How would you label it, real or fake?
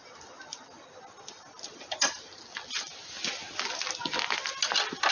real